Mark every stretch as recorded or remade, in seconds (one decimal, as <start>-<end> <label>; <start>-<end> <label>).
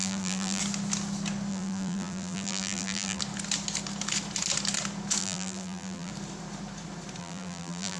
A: 0.0-0.6 remade; 0.6-1.5 recorded; 1.5-3.2 remade; 3.2-5.2 recorded; 5.2-6.1 remade; 6.1-7.2 recorded; 7.2-8.0 remade